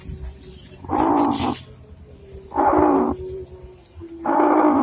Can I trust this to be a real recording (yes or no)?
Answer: yes